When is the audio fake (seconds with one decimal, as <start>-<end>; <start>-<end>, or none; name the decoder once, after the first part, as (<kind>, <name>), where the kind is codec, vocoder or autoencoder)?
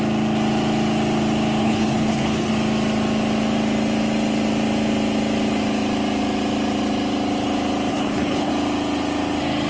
1.6-2.5 (codec, HILCodec); 7.9-8.5